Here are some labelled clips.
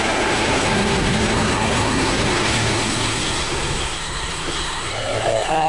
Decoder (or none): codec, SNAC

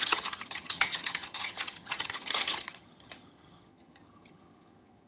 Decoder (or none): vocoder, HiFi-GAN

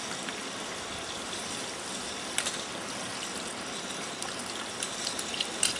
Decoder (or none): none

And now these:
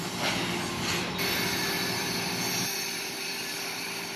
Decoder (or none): none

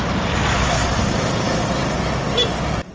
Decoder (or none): none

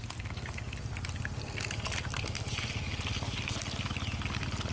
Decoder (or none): none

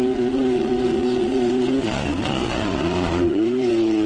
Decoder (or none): vocoder, Vocos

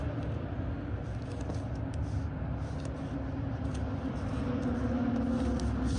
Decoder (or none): none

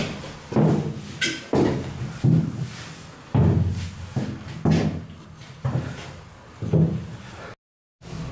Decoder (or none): none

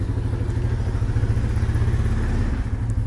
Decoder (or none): none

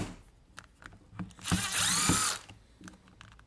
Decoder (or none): none